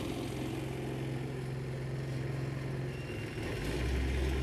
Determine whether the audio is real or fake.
real